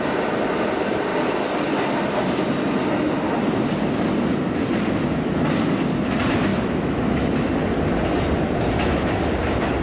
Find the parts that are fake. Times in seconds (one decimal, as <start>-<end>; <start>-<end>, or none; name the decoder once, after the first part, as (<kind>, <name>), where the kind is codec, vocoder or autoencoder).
6.5-7.5 (autoencoder, DAC-VAE)